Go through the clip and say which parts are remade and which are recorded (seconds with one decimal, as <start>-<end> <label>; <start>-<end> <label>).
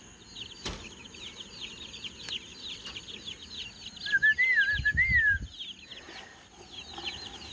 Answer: 0.0-7.5 recorded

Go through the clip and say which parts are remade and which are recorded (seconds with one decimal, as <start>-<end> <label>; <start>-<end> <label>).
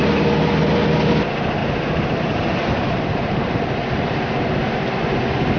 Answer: 0.0-1.6 recorded; 1.6-5.0 remade; 5.0-5.6 recorded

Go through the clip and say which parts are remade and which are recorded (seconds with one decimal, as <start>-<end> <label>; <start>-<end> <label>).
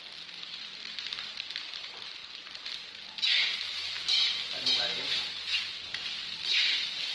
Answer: 0.0-2.2 remade; 2.2-5.6 recorded; 5.6-7.1 remade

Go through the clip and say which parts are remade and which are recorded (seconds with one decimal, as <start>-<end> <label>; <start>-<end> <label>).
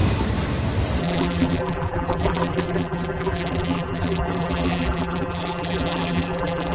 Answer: 0.0-1.0 recorded; 1.0-6.7 remade